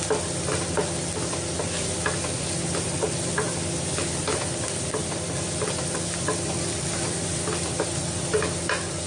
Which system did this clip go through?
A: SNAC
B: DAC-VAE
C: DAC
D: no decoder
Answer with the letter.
D